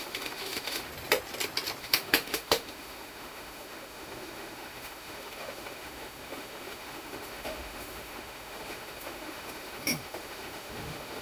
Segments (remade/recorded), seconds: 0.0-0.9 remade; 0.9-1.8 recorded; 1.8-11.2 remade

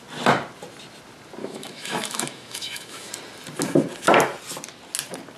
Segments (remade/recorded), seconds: 0.0-1.4 recorded; 1.4-3.1 remade; 3.1-5.4 recorded